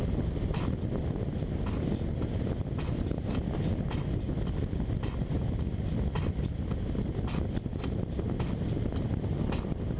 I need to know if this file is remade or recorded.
recorded